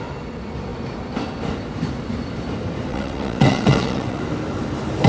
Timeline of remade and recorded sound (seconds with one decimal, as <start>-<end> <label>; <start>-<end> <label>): 0.0-2.9 recorded; 2.9-4.2 remade; 4.2-5.1 recorded